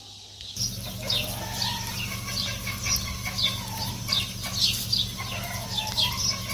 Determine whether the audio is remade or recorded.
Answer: recorded